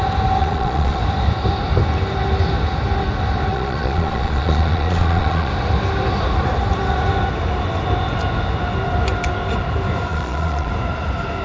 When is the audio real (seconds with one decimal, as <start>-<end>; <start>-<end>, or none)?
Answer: 0.0-0.4; 1.0-3.5; 5.5-10.1; 10.7-11.4